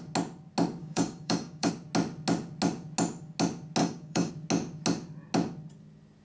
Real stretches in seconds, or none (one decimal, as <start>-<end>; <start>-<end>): 0.0-0.8; 1.7-3.8; 4.3-6.2